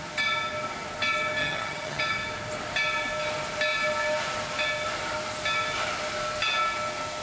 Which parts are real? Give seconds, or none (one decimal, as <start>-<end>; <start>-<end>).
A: 0.0-1.4; 2.0-7.2